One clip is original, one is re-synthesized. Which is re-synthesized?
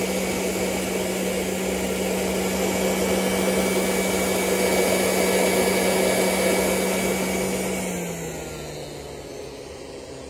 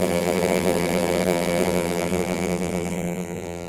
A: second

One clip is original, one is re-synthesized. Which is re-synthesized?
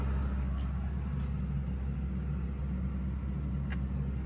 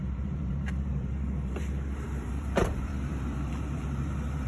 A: second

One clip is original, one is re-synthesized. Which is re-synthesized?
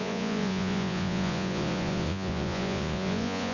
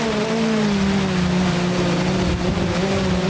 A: first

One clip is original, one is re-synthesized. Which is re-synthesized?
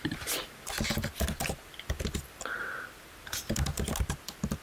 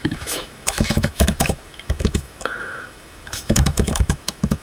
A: second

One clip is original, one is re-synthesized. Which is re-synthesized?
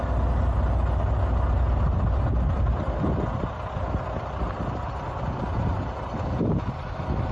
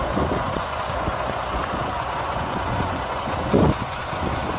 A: second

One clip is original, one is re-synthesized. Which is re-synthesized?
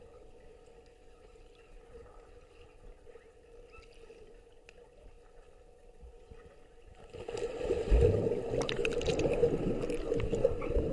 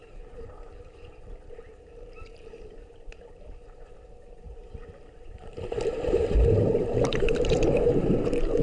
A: second